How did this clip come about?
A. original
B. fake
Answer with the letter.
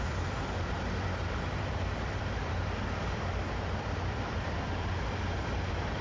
B